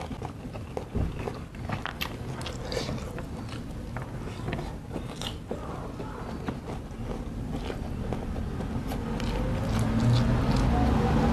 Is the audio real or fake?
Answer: real